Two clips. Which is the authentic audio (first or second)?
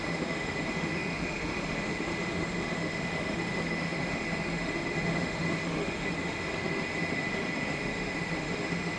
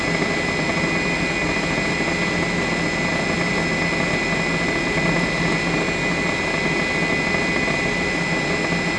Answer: second